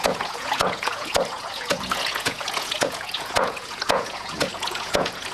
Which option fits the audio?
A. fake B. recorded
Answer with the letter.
A